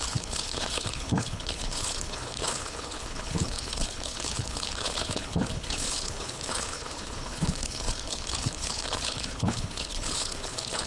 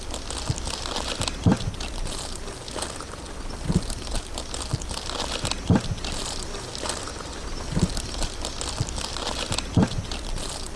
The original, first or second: second